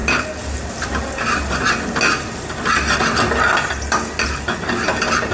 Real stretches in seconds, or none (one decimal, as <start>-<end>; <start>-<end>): 0.0-5.3